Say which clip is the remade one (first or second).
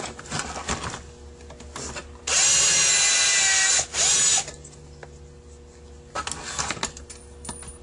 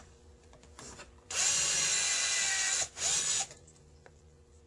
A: second